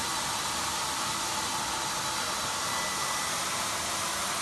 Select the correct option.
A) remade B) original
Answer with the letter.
B